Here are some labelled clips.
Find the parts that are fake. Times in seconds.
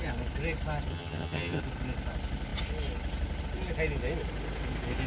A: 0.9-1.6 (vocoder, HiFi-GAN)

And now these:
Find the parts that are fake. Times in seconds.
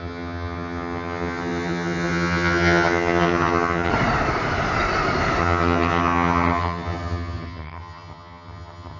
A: 0.0-3.9 (vocoder, HiFi-GAN); 5.4-9.0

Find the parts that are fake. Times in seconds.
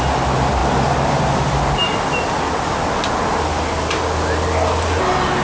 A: none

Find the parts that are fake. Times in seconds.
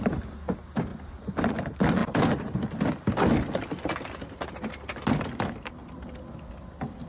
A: none